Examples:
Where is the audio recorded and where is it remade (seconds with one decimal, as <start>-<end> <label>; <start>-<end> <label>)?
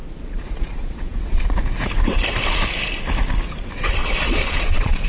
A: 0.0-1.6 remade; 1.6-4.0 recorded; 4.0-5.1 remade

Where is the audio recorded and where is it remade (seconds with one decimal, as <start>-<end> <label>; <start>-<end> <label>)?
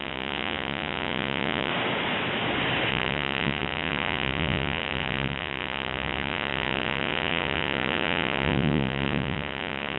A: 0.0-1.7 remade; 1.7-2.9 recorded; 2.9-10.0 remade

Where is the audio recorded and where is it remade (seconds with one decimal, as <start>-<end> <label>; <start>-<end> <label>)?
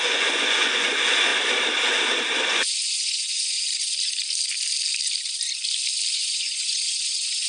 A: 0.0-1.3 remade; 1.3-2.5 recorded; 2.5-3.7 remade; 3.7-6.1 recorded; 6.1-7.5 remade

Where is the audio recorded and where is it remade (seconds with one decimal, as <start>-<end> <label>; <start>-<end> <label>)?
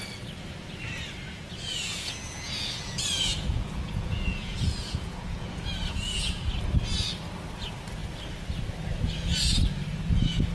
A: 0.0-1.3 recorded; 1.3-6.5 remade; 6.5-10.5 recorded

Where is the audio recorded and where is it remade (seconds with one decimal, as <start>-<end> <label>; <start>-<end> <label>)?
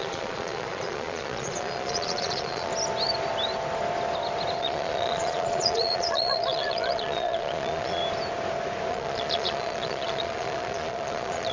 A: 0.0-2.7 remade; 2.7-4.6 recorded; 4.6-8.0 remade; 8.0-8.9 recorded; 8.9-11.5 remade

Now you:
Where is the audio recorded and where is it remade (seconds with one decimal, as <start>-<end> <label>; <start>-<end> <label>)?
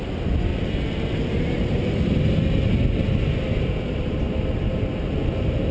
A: 0.0-5.7 recorded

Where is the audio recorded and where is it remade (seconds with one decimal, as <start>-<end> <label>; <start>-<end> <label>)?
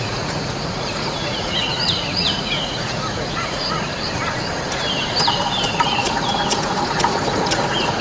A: 0.0-3.9 remade; 3.9-5.7 recorded; 5.7-8.0 remade